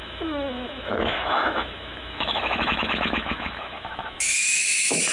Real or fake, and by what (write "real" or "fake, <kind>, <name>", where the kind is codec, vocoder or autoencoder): fake, autoencoder, DAC-VAE